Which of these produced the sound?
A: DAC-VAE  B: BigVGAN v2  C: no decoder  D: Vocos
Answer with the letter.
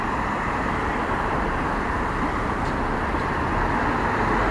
C